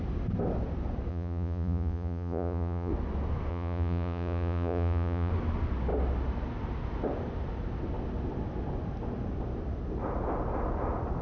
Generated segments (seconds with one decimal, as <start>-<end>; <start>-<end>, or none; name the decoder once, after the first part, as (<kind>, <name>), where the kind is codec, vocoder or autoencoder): 1.1-2.9 (vocoder, Vocos); 3.5-5.3